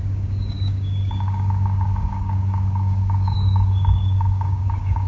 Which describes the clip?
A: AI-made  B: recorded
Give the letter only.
A